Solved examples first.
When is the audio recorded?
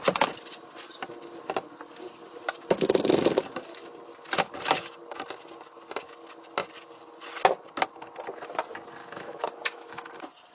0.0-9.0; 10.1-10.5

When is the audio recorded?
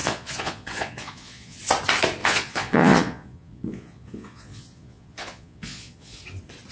1.6-2.2; 6.2-6.7